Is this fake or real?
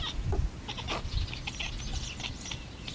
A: real